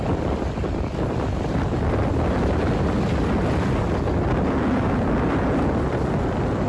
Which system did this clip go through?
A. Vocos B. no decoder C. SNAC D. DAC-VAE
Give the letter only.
B